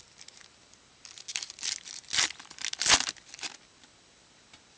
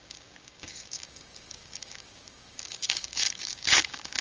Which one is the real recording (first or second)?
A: first